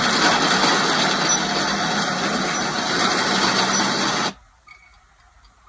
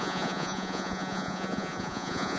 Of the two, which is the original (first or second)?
first